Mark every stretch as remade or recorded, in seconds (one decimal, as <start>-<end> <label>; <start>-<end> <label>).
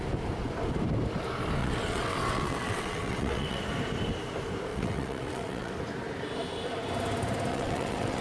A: 0.0-1.6 recorded; 1.6-3.6 remade; 3.6-4.7 recorded; 4.7-5.7 remade; 5.7-7.5 recorded; 7.5-8.2 remade